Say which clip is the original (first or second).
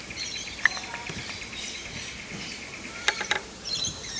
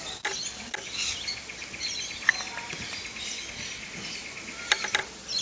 second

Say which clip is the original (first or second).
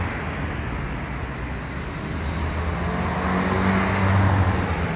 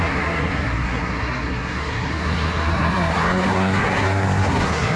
first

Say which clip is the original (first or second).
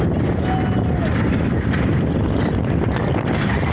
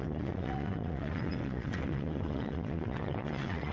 first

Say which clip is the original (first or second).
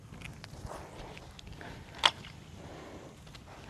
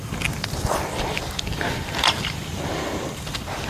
first